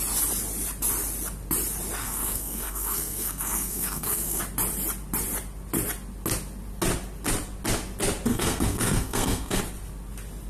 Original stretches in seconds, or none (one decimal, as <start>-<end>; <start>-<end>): 0.0-2.0; 4.4-8.3; 9.6-10.5